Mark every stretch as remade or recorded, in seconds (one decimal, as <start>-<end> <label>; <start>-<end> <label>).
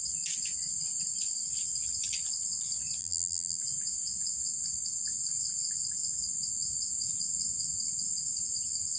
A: 0.0-3.0 recorded; 3.0-3.6 remade; 3.6-9.0 recorded